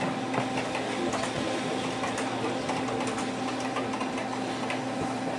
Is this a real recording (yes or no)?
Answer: yes